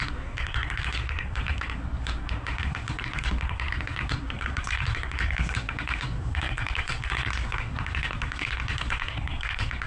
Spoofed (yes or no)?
yes